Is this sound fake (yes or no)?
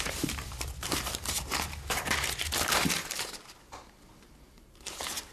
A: yes